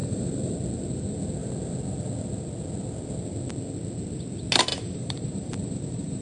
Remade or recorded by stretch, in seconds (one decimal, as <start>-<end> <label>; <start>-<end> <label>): 0.0-0.5 remade; 0.5-4.7 recorded; 4.7-6.2 remade